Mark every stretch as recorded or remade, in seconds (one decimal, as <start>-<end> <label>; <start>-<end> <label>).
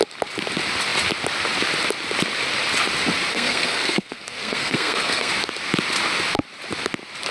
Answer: 0.0-3.3 recorded; 3.3-5.3 remade; 5.3-7.3 recorded